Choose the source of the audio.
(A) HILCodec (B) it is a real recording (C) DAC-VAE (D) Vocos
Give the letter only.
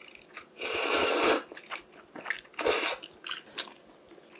B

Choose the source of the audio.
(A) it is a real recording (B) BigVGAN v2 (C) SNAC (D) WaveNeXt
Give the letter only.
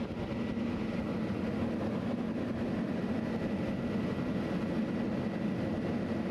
A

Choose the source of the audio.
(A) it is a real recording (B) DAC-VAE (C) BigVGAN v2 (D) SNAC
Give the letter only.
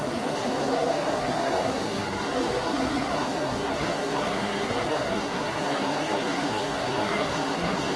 D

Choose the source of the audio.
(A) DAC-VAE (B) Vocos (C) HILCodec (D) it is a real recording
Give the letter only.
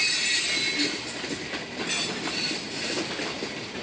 D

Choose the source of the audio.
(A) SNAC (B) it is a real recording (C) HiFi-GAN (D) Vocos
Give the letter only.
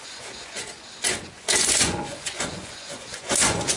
D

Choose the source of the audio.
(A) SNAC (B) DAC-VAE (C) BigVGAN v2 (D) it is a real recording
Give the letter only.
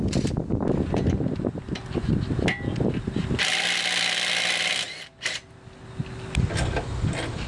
D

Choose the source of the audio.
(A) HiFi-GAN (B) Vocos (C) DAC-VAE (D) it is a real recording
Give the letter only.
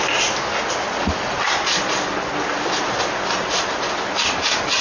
D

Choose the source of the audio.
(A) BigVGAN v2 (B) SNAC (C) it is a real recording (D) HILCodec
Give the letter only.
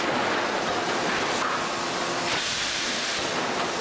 C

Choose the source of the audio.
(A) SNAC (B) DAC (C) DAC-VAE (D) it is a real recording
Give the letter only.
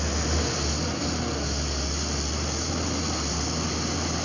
D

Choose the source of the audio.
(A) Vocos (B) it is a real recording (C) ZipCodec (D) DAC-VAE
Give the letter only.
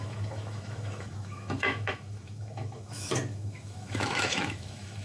D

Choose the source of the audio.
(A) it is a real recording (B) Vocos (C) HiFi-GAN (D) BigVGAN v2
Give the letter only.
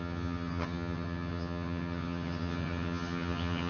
C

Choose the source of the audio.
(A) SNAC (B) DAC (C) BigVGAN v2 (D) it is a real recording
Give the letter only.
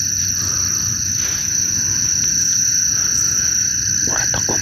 D